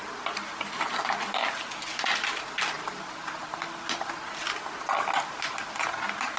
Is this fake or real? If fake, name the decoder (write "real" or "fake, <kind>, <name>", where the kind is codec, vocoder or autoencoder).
real